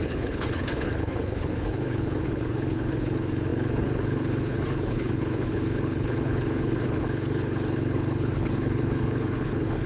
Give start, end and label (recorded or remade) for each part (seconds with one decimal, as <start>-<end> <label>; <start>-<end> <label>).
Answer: 0.0-9.9 remade

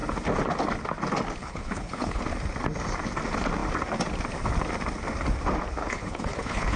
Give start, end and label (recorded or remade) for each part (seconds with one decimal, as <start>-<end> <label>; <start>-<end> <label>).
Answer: 0.0-1.4 recorded; 1.4-2.2 remade; 2.2-5.8 recorded; 5.8-6.8 remade

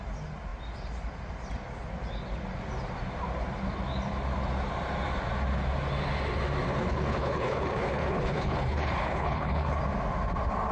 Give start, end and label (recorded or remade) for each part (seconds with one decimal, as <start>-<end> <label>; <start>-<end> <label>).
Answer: 0.0-6.7 recorded; 6.7-9.8 remade; 9.8-10.7 recorded

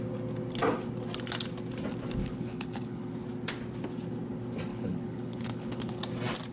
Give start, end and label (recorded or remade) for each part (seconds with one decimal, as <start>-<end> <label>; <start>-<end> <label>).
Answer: 0.0-2.2 recorded; 2.2-3.2 remade; 3.2-4.7 recorded; 4.7-6.0 remade; 6.0-6.5 recorded

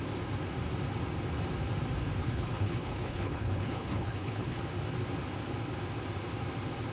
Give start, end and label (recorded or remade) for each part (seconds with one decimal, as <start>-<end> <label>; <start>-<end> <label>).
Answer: 0.0-2.2 recorded; 2.2-4.6 remade; 4.6-6.9 recorded

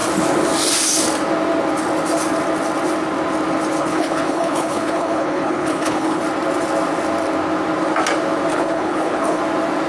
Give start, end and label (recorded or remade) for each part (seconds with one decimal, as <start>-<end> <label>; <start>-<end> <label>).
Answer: 0.0-3.8 recorded; 3.8-6.2 remade; 6.2-8.5 recorded; 8.5-9.4 remade; 9.4-9.9 recorded

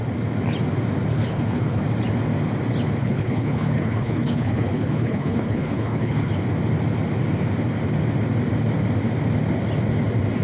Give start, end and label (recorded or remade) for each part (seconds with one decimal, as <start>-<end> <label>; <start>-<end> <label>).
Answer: 0.0-1.1 recorded; 1.1-1.8 remade; 1.8-3.0 recorded; 3.0-6.3 remade; 6.3-10.4 recorded